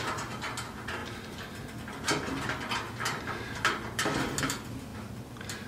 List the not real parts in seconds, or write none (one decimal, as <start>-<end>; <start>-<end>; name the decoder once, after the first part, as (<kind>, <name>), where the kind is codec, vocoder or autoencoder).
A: none

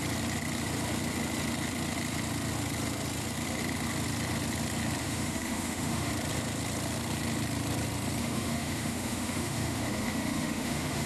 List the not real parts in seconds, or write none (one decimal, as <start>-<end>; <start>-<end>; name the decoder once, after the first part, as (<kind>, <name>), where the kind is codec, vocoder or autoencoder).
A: 5.0-6.1 (autoencoder, DAC-VAE); 8.2-11.1

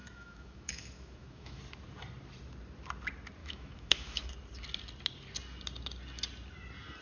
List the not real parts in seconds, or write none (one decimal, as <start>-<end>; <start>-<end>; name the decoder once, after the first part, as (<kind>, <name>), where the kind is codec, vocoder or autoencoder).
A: 0.0-1.6 (autoencoder, DAC-VAE); 3.4-4.3

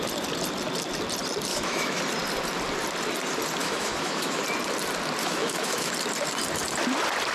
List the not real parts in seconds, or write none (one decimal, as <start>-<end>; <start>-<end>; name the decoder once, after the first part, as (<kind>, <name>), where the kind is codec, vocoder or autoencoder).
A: 1.5-2.0 (autoencoder, DAC-VAE); 3.6-4.4; 5.2-5.9